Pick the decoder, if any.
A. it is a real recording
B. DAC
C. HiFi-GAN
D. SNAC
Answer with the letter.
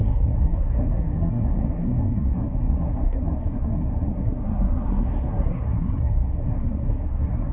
D